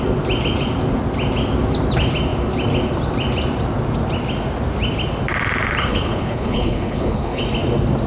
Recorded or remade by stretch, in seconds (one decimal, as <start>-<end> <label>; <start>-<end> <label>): 0.0-5.8 recorded; 5.8-7.4 remade; 7.4-8.1 recorded